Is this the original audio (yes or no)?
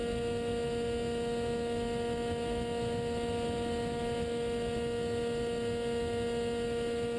yes